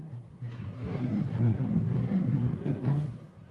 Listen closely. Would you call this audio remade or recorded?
remade